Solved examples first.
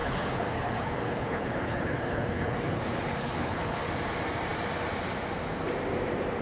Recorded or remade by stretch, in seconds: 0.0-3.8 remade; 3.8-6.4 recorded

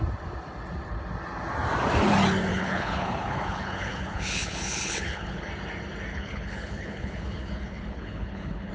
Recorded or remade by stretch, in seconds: 0.0-2.5 recorded; 2.5-5.5 remade; 5.5-6.1 recorded; 6.1-8.7 remade

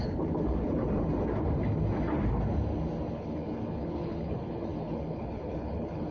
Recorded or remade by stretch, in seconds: 0.0-0.8 remade; 0.8-3.1 recorded; 3.1-6.1 remade

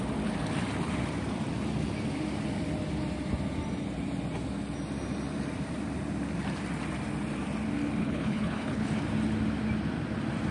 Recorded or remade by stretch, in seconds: 0.0-8.0 recorded; 8.0-9.0 remade; 9.0-10.5 recorded

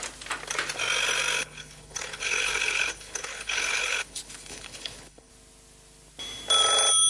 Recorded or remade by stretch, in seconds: 0.0-1.4 recorded; 1.4-5.3 remade; 5.3-7.1 recorded